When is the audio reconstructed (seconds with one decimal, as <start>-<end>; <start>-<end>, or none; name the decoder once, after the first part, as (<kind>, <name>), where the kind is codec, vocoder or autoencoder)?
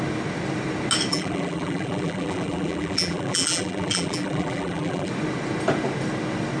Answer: 1.1-5.1 (vocoder, BigVGAN v2)